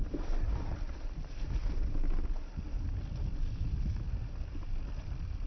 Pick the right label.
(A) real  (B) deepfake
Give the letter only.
A